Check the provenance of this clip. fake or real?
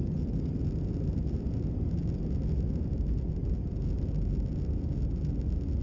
real